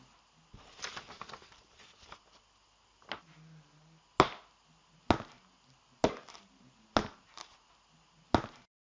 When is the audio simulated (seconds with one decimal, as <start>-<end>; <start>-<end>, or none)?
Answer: none